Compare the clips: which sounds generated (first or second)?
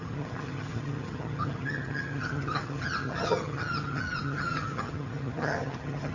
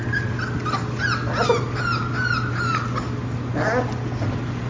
first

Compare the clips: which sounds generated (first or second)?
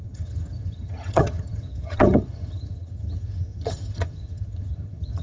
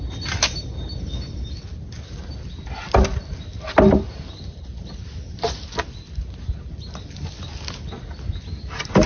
first